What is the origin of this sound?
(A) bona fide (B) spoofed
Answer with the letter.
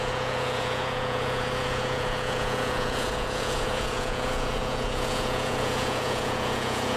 B